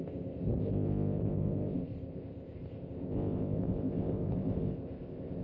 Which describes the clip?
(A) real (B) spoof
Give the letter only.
B